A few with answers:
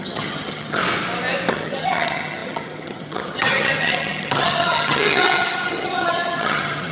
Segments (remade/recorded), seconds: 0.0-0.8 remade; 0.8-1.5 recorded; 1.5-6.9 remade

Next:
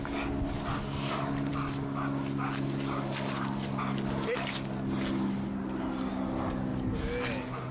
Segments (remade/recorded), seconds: 0.0-7.7 recorded

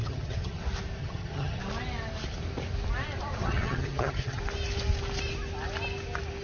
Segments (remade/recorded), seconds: 0.0-0.6 remade; 0.6-1.0 recorded; 1.0-1.6 remade; 1.6-3.4 recorded; 3.4-4.4 remade; 4.4-6.4 recorded

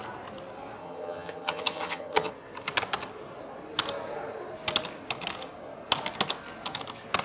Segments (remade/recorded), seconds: 0.0-0.8 recorded; 0.8-2.3 remade; 2.3-7.2 recorded

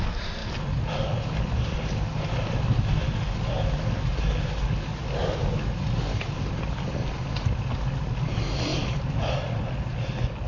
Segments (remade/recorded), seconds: 0.0-10.5 recorded